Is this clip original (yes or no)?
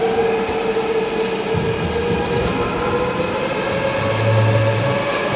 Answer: yes